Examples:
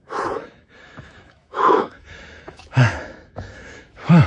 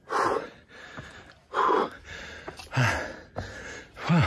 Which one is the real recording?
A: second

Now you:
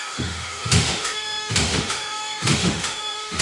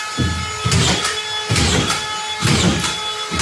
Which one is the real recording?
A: second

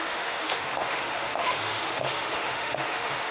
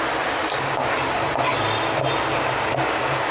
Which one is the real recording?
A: second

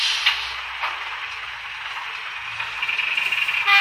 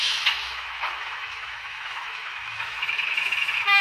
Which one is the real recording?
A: first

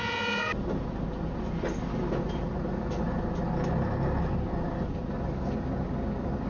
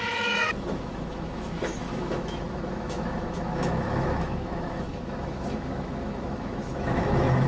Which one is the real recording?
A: first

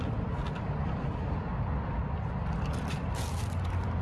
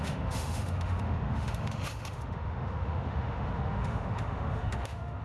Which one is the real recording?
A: first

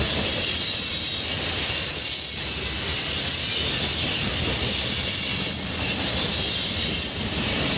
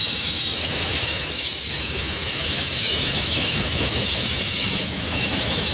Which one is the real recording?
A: first